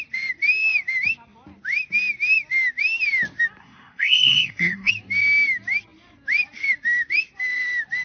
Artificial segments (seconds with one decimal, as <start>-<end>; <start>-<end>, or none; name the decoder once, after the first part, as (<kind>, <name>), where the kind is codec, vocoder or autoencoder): 3.6-4.9 (codec, SNAC)